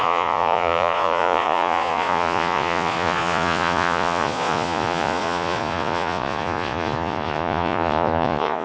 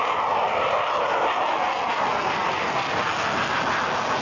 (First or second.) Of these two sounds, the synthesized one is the first